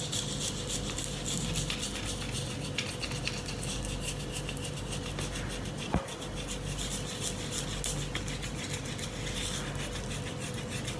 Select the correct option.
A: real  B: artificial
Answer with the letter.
A